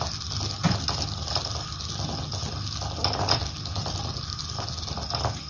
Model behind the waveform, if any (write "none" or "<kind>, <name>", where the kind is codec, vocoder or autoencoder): none